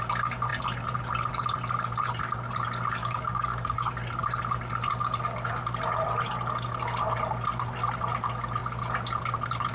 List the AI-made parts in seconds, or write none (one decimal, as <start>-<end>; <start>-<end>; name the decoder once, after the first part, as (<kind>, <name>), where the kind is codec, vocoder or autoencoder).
3.0-3.9 (codec, DAC)